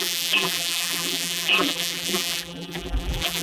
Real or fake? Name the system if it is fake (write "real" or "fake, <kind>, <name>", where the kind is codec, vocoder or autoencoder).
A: fake, vocoder, BigVGAN v2